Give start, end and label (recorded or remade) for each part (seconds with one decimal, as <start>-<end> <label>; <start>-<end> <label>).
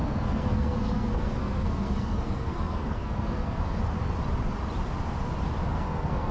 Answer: 0.0-3.8 remade; 3.8-5.7 recorded; 5.7-6.3 remade